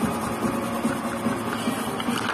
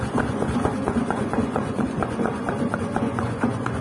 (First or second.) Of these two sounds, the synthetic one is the second